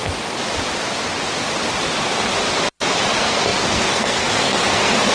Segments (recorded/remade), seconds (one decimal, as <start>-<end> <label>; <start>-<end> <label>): 0.0-3.1 recorded; 3.1-5.1 remade